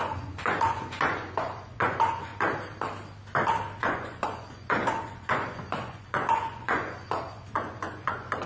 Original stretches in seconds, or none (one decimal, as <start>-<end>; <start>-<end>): 2.3-3.8